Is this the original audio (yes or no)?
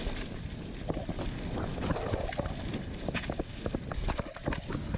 yes